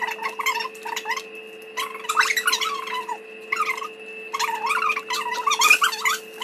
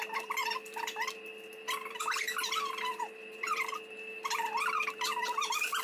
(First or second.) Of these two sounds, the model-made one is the second